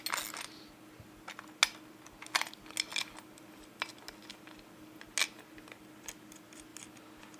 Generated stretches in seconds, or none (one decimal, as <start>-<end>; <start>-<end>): none